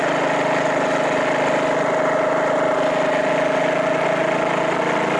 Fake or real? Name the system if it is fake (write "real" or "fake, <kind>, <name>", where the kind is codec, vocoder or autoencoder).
real